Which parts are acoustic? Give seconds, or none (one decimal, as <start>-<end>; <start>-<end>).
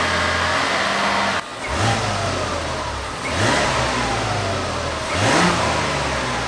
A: 0.0-6.5